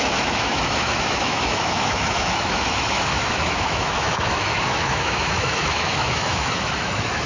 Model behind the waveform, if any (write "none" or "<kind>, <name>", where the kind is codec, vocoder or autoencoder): autoencoder, DAC-VAE